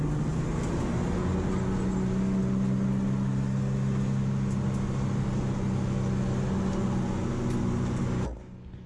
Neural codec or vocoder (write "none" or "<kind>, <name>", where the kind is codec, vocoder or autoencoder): none